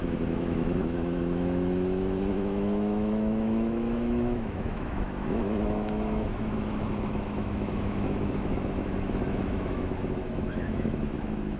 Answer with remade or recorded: remade